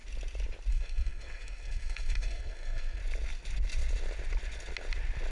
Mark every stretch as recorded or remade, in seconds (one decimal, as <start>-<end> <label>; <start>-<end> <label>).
0.0-0.7 recorded; 0.7-3.0 remade; 3.0-5.3 recorded